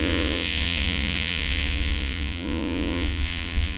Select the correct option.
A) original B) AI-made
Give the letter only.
B